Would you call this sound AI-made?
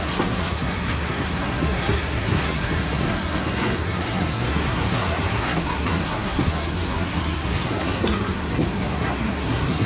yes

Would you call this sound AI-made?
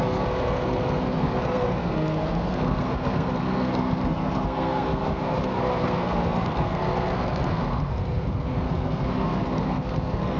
yes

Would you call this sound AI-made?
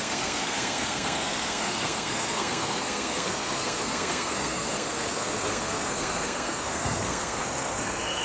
yes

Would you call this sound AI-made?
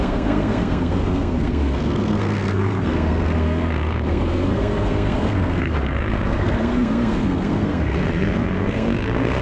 yes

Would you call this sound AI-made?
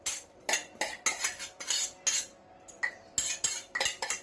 no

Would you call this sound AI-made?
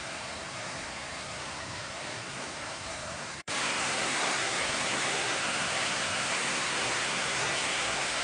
yes